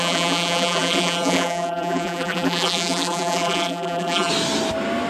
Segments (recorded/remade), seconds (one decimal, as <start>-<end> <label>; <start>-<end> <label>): 0.0-4.3 remade; 4.3-5.1 recorded